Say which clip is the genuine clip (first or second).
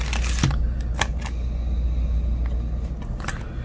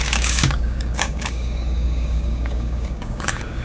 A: first